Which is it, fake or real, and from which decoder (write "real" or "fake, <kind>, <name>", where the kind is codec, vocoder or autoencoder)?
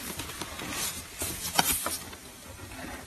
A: fake, vocoder, BigVGAN v2